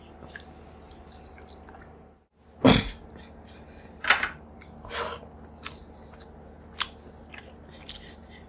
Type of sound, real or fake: real